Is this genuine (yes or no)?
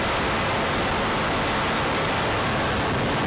yes